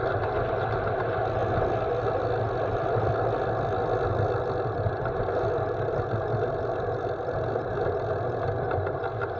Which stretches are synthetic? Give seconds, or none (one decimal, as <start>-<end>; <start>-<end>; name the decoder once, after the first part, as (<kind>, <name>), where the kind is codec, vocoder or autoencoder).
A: none